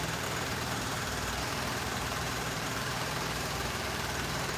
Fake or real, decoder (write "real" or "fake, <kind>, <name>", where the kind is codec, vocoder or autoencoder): fake, vocoder, BigVGAN v2